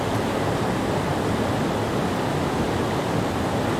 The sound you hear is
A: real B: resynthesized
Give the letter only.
A